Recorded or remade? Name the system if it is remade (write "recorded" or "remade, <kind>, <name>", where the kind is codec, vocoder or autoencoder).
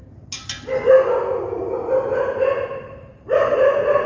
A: recorded